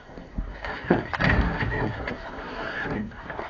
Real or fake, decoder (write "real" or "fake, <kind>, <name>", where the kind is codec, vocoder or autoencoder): fake, codec, SNAC